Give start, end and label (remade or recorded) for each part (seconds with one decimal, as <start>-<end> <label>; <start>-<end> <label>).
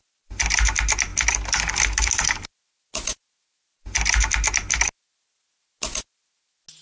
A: 0.0-6.8 recorded